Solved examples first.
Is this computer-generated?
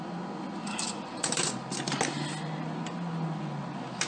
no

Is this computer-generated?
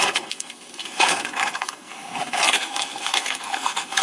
yes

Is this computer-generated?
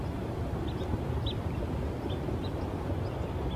no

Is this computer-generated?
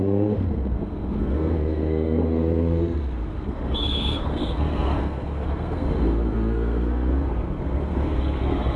yes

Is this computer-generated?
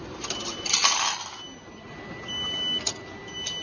no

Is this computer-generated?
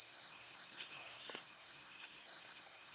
yes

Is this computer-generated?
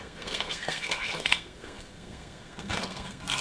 yes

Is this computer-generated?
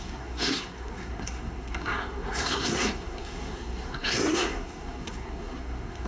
yes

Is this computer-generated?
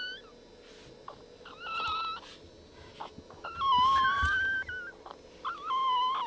no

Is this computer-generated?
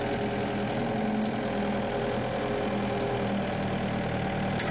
no